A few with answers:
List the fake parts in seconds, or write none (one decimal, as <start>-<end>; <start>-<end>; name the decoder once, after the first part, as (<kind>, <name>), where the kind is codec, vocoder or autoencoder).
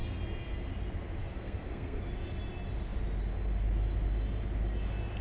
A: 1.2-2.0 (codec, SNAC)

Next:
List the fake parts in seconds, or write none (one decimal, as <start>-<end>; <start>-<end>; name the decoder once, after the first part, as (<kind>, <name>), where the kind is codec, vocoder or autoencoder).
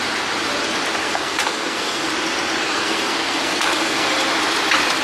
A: 1.0-2.1 (codec, SNAC); 2.6-4.1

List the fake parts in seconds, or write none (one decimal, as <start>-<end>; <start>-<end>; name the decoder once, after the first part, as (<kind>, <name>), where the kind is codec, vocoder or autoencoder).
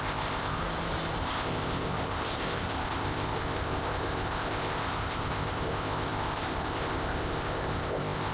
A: 0.0-0.6 (codec, ZipCodec); 1.2-8.3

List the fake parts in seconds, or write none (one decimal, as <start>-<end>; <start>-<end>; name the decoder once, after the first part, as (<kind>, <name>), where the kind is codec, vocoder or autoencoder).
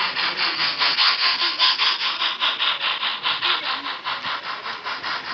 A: 0.5-2.2 (codec, SNAC)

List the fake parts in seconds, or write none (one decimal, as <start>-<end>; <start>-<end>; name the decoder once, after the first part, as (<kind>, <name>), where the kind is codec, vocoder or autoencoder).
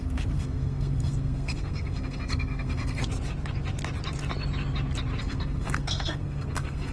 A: 0.0-3.0 (codec, SNAC); 5.2-6.9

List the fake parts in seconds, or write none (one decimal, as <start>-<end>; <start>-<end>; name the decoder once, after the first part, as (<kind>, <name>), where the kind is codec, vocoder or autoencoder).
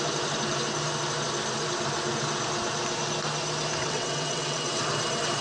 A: 3.8-4.8 (vocoder, WaveNeXt)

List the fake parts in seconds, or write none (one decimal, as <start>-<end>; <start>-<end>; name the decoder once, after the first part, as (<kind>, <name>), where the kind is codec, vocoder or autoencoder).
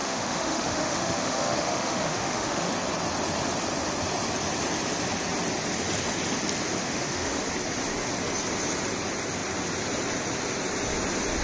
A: 0.0-2.7 (autoencoder, DAC-VAE); 6.8-7.4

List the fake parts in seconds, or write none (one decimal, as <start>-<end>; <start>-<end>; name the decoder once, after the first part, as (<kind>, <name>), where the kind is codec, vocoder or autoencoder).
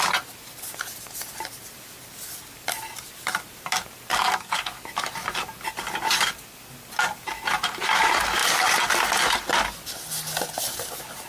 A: 4.1-4.9 (codec, DAC)